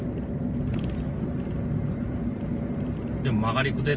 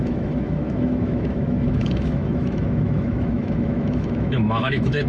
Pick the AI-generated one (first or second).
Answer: second